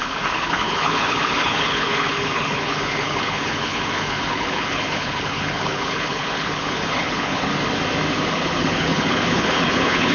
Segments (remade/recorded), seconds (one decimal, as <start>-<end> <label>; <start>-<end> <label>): 0.0-7.5 remade; 7.5-8.3 recorded; 8.3-10.1 remade